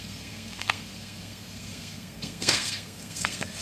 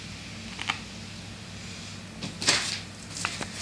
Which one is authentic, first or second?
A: second